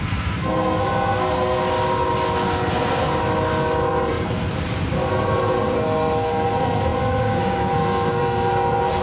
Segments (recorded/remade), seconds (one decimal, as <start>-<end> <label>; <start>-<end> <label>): 0.0-1.6 remade; 1.6-2.7 recorded; 2.7-3.1 remade; 3.1-4.1 recorded; 4.1-4.5 remade; 4.5-5.1 recorded; 5.1-9.0 remade